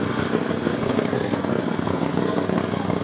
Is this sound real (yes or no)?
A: no